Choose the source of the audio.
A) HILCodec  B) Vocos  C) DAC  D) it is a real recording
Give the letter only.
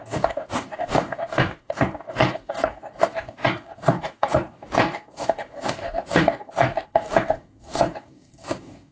C